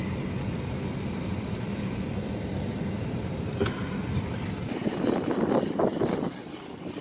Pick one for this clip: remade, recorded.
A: recorded